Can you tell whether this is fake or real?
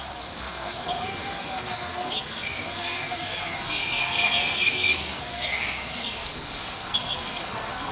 fake